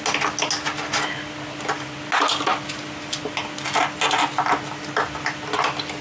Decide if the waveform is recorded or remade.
recorded